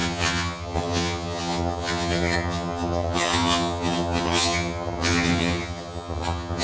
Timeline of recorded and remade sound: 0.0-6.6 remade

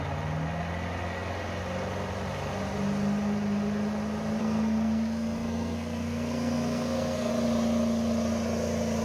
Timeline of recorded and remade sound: 0.0-4.4 recorded; 4.4-7.3 remade; 7.3-9.0 recorded

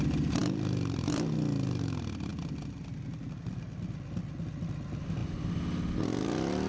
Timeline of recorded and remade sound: 0.0-6.7 recorded

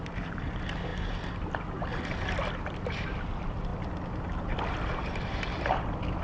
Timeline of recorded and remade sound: 0.0-6.2 remade